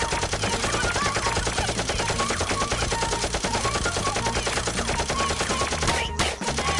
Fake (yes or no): no